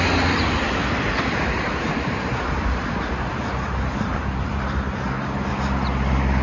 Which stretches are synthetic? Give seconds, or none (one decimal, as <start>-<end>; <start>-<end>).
none